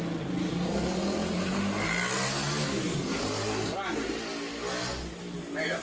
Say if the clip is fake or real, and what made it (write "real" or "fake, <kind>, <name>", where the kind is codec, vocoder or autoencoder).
real